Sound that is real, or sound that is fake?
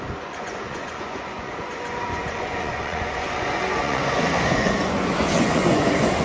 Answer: fake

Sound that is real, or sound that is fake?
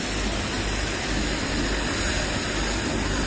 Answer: real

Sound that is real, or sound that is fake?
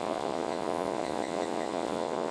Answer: fake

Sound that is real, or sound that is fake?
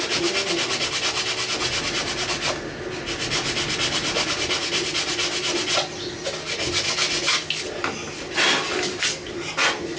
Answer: real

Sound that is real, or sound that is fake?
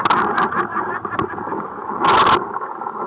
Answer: real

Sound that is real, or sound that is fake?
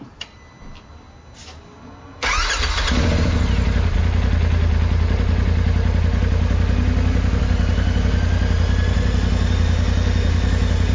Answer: real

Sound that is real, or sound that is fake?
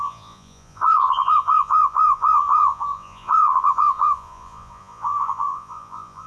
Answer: fake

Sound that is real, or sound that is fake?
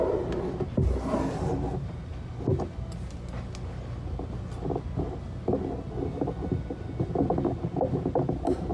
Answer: real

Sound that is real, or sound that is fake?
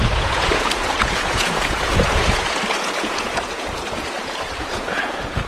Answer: fake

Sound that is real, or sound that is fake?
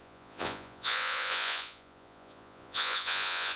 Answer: fake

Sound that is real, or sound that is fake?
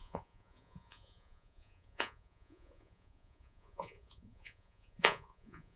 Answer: fake